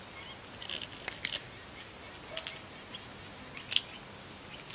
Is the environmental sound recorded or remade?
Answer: recorded